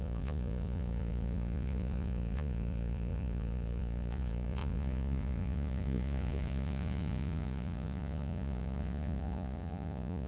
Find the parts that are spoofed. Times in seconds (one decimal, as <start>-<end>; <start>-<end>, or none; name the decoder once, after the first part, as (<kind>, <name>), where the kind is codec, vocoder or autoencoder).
0.0-10.3 (vocoder, Vocos)